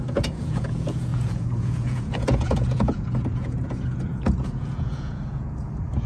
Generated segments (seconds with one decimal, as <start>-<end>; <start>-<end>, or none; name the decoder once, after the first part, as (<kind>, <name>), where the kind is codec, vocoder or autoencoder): 0.0-6.1 (vocoder, Vocos)